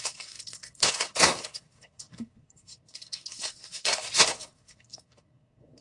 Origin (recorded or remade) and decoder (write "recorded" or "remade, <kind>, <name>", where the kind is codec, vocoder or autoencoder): remade, codec, SNAC